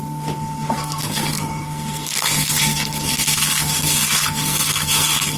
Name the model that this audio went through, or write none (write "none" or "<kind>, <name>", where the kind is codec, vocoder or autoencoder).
codec, SNAC